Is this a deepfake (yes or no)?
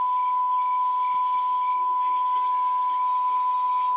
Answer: no